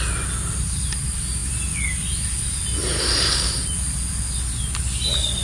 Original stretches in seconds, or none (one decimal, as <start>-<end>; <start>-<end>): 0.0-5.4